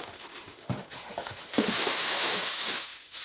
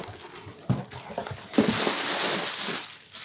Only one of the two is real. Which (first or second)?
second